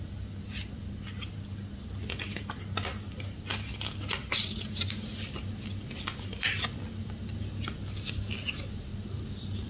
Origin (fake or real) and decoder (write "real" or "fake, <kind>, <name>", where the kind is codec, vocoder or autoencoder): real